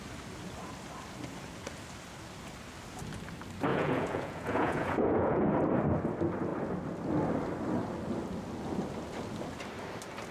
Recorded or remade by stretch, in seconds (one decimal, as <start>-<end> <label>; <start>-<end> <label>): 0.0-3.7 recorded; 3.7-5.5 remade; 5.5-10.3 recorded